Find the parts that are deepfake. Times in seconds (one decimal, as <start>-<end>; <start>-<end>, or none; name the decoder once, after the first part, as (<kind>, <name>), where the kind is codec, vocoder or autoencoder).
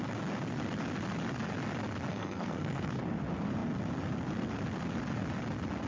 2.1-2.9 (codec, SNAC)